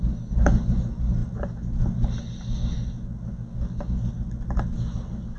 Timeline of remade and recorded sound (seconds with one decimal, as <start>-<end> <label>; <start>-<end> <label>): 0.0-5.4 recorded